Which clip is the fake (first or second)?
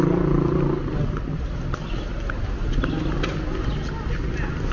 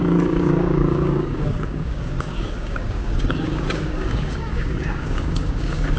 second